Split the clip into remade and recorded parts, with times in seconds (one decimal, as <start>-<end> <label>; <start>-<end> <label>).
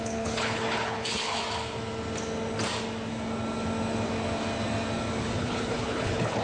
0.0-1.4 remade; 1.4-5.2 recorded; 5.2-6.4 remade